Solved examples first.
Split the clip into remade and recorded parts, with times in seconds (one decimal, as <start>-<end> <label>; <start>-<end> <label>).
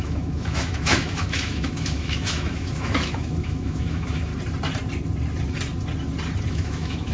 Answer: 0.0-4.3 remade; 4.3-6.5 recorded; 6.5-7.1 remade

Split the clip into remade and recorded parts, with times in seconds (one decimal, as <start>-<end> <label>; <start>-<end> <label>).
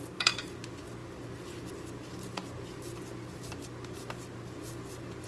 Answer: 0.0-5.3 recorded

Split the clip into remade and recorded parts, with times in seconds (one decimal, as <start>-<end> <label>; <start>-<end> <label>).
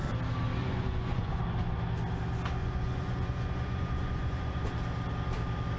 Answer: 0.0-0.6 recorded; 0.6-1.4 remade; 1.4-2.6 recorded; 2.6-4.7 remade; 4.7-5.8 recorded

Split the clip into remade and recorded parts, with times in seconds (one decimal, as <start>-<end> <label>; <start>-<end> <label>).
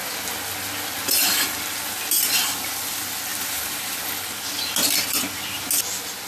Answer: 0.0-3.3 recorded; 3.3-4.0 remade; 4.0-6.3 recorded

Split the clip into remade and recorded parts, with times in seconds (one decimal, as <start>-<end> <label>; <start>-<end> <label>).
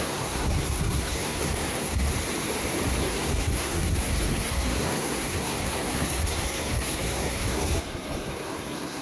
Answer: 0.0-2.1 remade; 2.1-3.0 recorded; 3.0-9.0 remade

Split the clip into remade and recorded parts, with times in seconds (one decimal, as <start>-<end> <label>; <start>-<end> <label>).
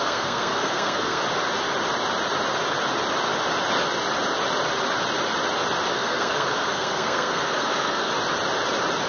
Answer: 0.0-1.2 remade; 1.2-5.9 recorded; 5.9-8.1 remade; 8.1-9.1 recorded